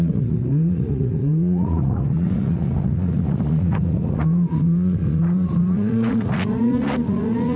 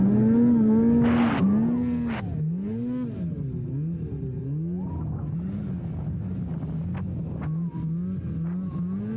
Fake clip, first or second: first